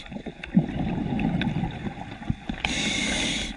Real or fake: real